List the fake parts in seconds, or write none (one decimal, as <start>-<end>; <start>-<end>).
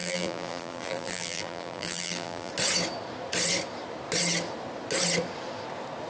0.0-2.5